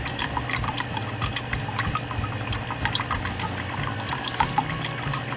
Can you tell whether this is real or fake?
real